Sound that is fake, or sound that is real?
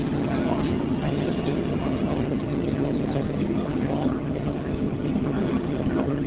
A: fake